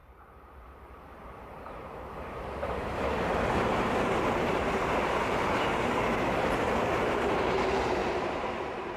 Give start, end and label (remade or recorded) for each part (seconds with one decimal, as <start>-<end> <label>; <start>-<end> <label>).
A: 0.0-9.0 remade